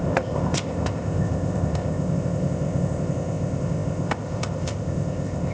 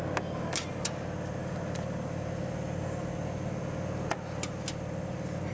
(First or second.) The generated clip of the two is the first